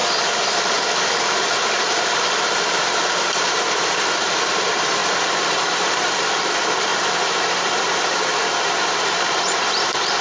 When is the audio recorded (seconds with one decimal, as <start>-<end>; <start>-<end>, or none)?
0.0-1.8